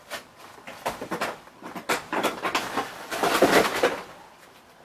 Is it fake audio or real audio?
real